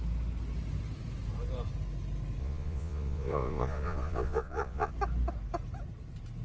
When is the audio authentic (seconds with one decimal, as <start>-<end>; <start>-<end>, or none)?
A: 0.0-2.4; 4.9-6.4